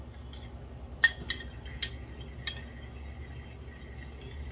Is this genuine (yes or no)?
yes